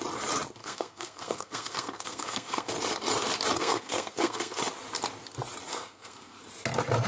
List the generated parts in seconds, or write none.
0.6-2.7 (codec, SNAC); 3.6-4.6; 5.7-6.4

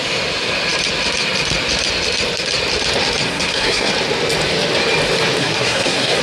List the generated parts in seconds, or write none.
3.3-3.9 (codec, SNAC); 5.4-6.2

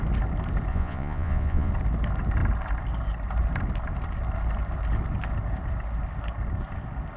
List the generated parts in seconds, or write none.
0.7-1.7 (vocoder, Vocos)

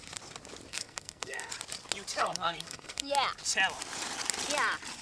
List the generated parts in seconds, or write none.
0.7-1.5 (codec, SNAC); 2.2-3.1

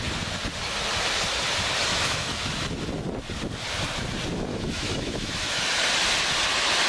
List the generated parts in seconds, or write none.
1.9-2.5 (autoencoder, DAC-VAE); 4.5-5.8

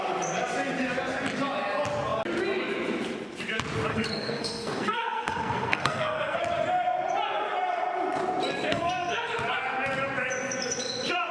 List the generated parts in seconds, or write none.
3.9-6.4 (codec, SNAC); 8.7-9.3

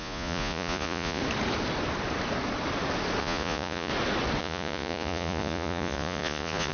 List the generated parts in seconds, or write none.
0.0-1.2 (vocoder, Vocos); 3.2-3.9; 4.4-6.7

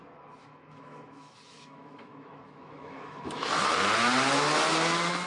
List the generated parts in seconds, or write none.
0.4-3.6 (autoencoder, DAC-VAE)